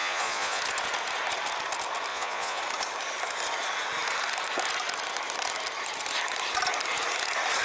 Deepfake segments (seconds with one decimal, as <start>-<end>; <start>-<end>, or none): 0.0-0.6; 2.1-2.6